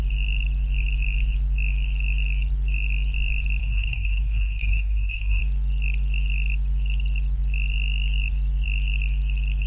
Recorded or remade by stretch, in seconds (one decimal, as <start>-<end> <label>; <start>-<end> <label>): 0.0-3.6 recorded; 3.6-5.4 remade; 5.4-9.7 recorded